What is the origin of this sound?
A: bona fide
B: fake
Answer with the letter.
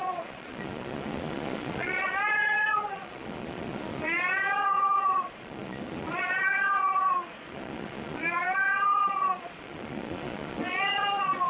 B